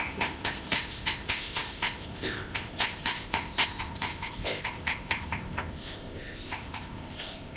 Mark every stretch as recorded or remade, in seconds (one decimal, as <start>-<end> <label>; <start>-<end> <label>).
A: 0.0-7.6 remade